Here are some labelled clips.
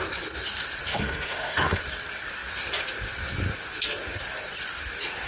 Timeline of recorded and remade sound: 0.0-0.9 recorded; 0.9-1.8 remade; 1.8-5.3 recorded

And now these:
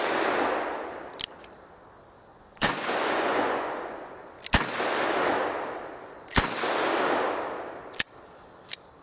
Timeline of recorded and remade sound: 0.0-2.3 recorded; 2.3-4.2 remade; 4.2-9.0 recorded

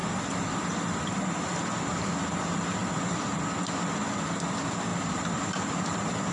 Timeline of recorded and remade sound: 0.0-1.1 remade; 1.1-1.5 recorded; 1.5-2.1 remade; 2.1-4.9 recorded; 4.9-6.3 remade

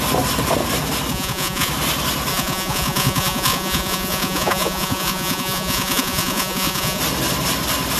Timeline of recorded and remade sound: 0.0-1.1 recorded; 1.1-1.7 remade; 1.7-2.3 recorded; 2.3-7.0 remade; 7.0-8.0 recorded

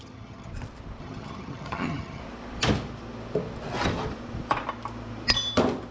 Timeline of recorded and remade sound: 0.0-0.5 remade; 0.5-1.0 recorded; 1.0-2.2 remade; 2.2-5.9 recorded

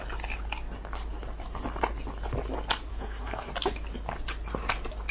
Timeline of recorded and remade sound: 0.0-2.9 recorded; 2.9-3.5 remade; 3.5-5.1 recorded